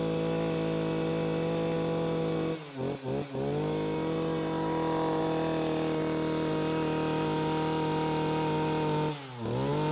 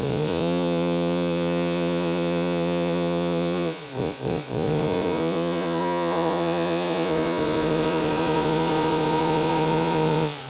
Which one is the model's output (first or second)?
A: second